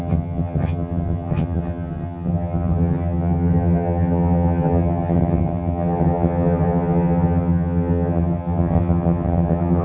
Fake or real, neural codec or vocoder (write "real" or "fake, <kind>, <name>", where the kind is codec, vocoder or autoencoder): fake, vocoder, HiFi-GAN